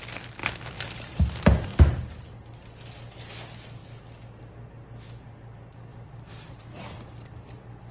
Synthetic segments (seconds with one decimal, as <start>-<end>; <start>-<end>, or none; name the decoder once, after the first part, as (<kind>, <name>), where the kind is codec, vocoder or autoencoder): 0.4-1.8 (vocoder, BigVGAN v2); 5.9-6.6